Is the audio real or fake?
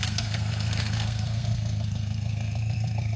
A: fake